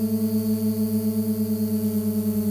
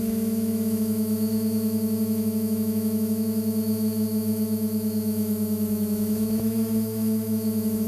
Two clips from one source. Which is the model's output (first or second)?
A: second